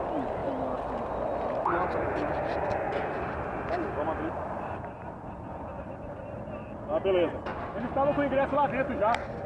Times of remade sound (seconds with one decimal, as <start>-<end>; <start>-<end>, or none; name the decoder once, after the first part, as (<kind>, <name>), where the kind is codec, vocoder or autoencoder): none